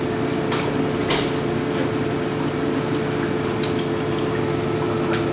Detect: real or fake real